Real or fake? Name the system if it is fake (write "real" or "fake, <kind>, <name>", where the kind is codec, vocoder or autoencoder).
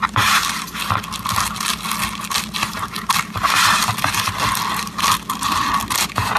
real